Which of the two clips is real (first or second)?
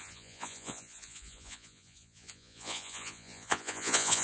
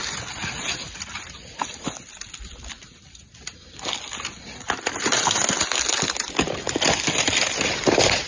second